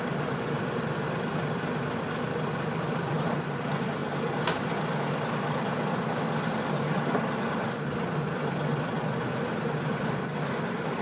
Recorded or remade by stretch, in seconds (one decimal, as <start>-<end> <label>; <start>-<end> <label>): 0.0-4.0 remade; 4.0-6.2 recorded; 6.2-11.0 remade